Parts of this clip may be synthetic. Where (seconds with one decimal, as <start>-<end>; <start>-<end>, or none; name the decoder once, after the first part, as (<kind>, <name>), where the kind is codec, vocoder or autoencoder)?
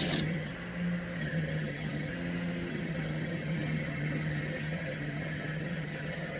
0.0-0.5 (vocoder, HiFi-GAN); 1.2-2.1; 2.7-6.4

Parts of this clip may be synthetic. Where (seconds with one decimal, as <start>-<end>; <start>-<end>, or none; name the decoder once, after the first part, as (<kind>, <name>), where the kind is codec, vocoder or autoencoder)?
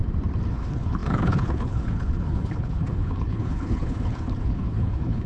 0.5-5.3 (codec, HILCodec)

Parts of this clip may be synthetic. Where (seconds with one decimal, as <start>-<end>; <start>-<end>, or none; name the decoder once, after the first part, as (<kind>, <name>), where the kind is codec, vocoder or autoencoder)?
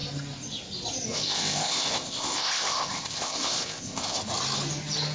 1.1-4.2 (codec, ZipCodec)